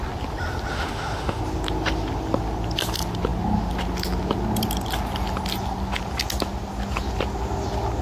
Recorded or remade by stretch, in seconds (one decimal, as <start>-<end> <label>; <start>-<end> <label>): 0.0-0.7 recorded; 0.7-1.4 remade; 1.4-8.0 recorded